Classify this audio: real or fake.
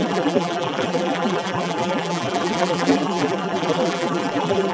fake